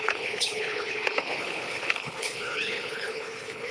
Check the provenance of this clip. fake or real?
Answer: fake